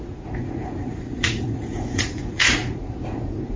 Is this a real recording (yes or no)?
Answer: no